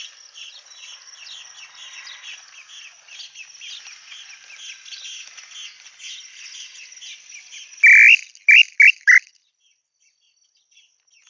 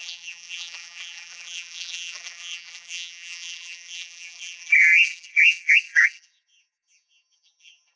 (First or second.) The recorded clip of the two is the first